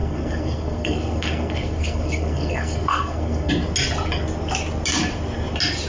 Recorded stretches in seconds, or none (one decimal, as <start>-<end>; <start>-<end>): 3.5-5.9